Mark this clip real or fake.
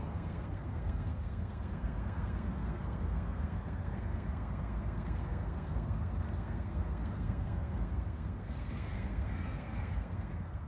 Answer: fake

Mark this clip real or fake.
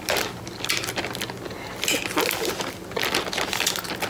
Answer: real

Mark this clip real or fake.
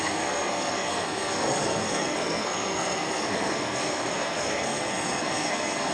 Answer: fake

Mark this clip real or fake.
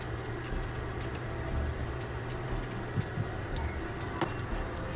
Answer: real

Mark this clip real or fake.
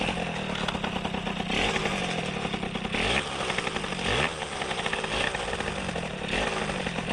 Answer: real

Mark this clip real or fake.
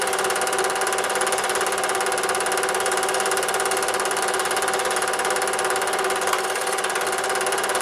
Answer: real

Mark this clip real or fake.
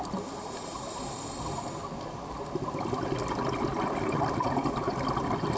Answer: real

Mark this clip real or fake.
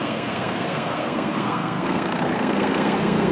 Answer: fake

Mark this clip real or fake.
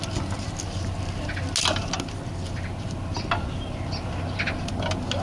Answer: real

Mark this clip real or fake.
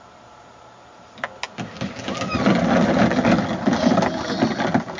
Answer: real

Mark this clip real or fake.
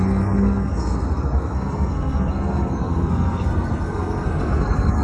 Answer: fake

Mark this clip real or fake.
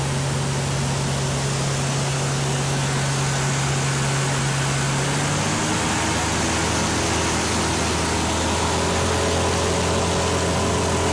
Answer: real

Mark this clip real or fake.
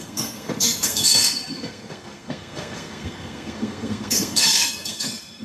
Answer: fake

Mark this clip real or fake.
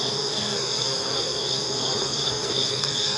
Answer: fake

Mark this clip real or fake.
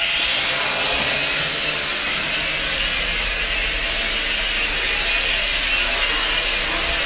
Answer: real